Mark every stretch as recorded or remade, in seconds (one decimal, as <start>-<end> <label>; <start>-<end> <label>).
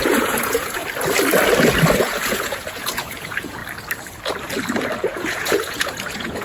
0.0-0.8 remade; 0.8-2.0 recorded; 2.0-3.6 remade; 3.6-5.0 recorded; 5.0-6.4 remade